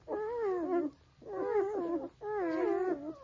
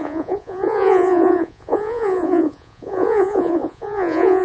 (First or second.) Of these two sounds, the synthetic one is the second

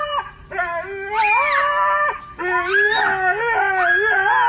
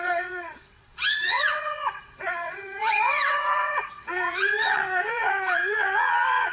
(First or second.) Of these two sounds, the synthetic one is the second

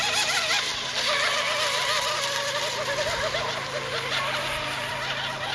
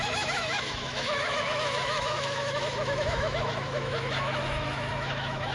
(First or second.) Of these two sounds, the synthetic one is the second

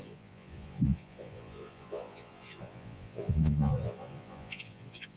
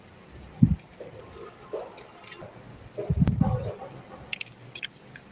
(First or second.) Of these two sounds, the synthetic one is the first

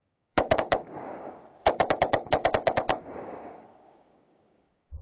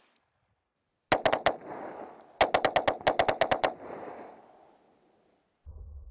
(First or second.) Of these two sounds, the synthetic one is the first